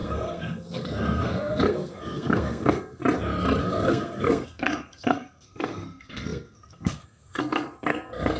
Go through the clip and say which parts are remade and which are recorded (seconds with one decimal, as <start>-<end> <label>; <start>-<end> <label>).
0.0-3.0 remade; 3.0-3.6 recorded; 3.6-8.4 remade